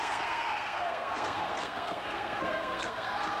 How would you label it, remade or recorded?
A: remade